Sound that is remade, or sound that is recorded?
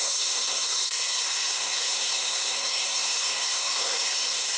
remade